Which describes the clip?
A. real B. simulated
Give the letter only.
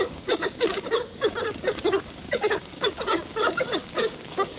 B